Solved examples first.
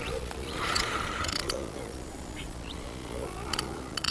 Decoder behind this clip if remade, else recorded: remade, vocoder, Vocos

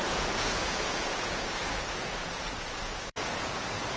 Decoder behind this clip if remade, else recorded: remade, vocoder, Vocos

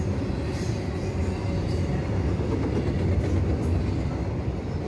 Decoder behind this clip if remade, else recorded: recorded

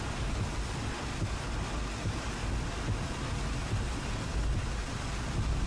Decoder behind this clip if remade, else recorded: recorded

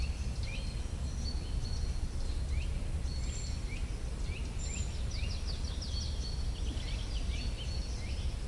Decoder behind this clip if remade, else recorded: recorded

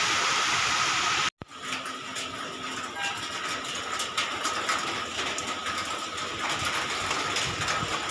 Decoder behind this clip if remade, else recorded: recorded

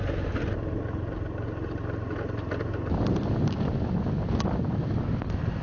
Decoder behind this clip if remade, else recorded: recorded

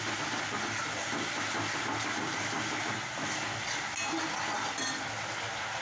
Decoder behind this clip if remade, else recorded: recorded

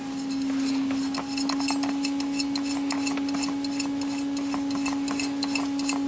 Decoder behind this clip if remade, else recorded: recorded